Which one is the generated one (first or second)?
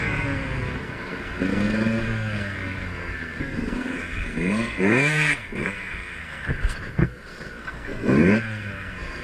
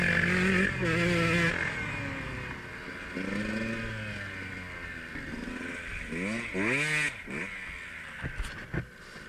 first